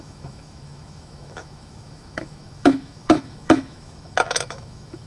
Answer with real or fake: fake